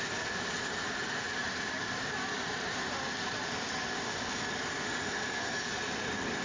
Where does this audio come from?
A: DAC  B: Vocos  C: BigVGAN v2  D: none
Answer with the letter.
D